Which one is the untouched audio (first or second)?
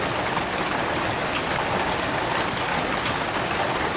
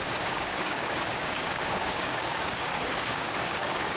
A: first